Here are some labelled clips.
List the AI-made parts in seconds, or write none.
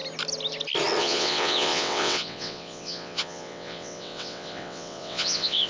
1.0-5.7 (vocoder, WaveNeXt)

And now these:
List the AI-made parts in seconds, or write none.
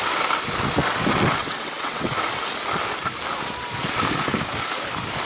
1.4-2.1 (vocoder, WaveNeXt)